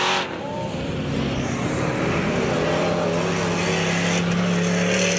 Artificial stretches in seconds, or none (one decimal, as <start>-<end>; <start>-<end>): none